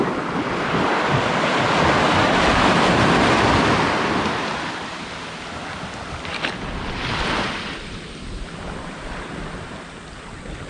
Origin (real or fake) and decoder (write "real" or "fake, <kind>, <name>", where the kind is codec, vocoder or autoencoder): real